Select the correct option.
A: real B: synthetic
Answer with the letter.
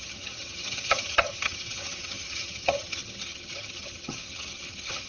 B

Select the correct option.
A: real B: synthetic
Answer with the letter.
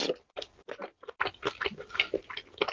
A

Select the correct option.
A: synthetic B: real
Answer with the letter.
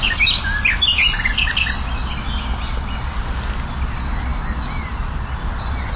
B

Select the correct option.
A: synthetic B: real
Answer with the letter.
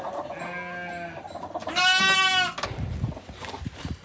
B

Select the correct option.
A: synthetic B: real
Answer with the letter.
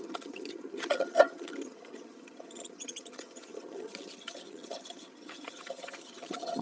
A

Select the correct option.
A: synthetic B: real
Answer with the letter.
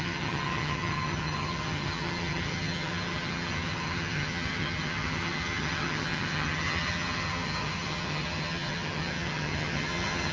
A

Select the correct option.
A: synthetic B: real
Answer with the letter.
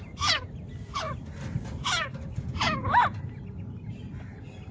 B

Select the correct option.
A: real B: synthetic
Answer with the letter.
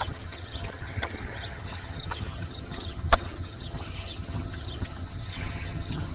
B